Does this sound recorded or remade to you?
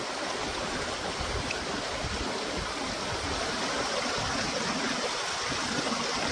recorded